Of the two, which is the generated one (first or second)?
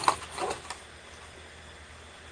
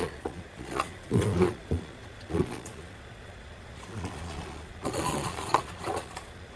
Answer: second